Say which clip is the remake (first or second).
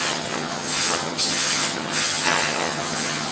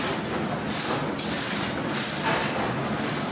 first